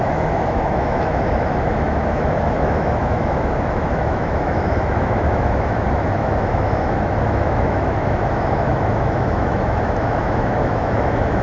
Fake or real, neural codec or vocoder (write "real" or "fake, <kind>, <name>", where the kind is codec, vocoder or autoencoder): fake, autoencoder, DAC-VAE